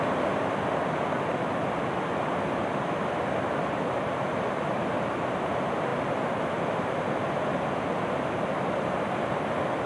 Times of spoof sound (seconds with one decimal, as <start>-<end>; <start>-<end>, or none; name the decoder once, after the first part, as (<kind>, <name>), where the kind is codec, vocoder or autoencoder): none